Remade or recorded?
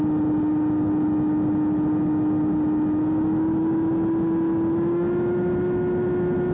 recorded